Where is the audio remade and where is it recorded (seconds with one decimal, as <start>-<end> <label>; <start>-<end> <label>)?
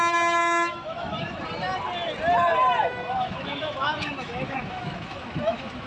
0.0-0.4 recorded; 0.4-1.4 remade; 1.4-2.8 recorded; 2.8-5.9 remade